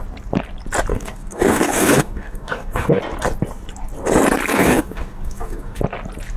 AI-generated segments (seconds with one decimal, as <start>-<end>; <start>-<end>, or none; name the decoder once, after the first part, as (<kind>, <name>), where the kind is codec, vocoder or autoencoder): 0.9-3.0 (codec, DAC); 4.5-5.8